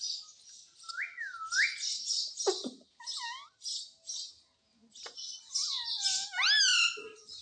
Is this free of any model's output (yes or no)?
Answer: yes